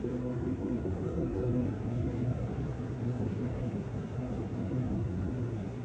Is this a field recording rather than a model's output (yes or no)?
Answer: no